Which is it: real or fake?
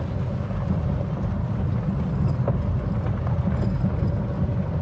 real